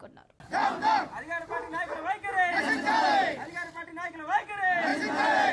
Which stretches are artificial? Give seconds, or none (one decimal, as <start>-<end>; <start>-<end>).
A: none